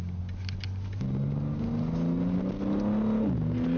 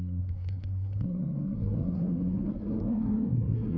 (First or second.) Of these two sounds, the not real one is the second